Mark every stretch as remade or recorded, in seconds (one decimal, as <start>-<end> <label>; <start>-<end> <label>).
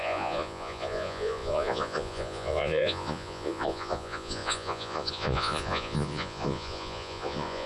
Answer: 0.0-7.7 remade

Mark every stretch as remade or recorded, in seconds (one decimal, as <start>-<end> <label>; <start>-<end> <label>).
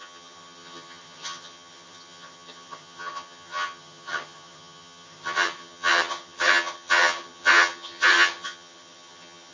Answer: 0.0-9.5 remade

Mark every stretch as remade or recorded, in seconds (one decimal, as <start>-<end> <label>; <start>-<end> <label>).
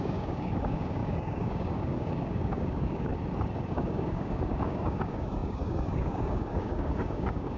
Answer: 0.0-3.1 remade; 3.1-3.7 recorded; 3.7-7.6 remade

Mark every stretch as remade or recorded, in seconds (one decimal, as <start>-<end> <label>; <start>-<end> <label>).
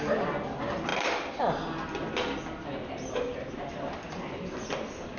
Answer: 0.0-5.2 recorded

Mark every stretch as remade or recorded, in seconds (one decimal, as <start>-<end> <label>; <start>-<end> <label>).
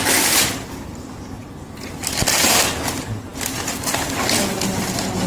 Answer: 0.0-5.3 recorded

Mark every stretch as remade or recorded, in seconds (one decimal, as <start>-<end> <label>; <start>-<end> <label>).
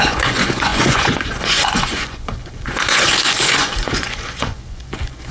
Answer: 0.0-5.3 remade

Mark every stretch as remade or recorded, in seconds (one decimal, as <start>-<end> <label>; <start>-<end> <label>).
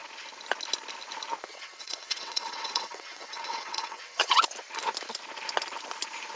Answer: 0.0-1.5 recorded; 1.5-4.4 remade; 4.4-6.4 recorded